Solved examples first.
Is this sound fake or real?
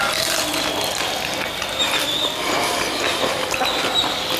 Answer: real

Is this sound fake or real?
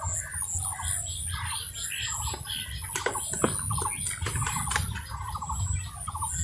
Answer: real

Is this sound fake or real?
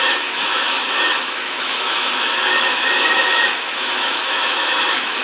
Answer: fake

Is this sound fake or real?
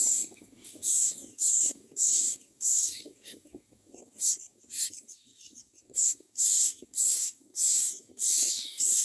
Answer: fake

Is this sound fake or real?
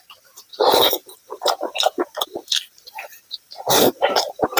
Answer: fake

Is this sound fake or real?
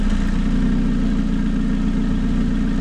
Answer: real